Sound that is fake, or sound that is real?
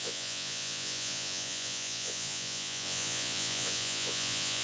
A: fake